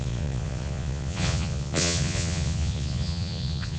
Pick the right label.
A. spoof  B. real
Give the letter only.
A